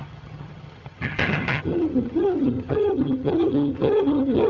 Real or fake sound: fake